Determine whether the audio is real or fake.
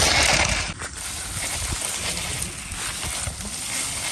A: real